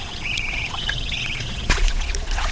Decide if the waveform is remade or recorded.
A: remade